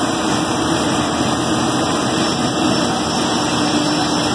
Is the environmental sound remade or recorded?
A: recorded